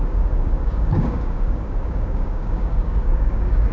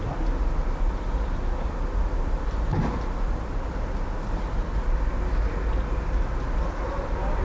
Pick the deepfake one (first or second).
first